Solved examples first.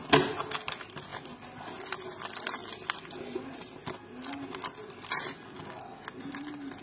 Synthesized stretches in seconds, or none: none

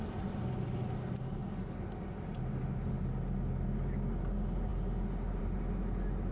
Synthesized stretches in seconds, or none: none

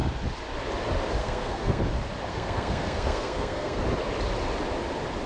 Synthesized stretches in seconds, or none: 1.2-1.8 (codec, SNAC); 2.3-3.8